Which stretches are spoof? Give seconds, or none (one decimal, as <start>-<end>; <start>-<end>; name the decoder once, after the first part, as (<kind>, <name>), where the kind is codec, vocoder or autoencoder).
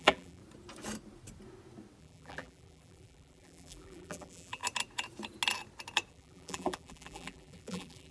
0.0-0.4 (vocoder, BigVGAN v2); 2.0-4.6; 6.1-8.1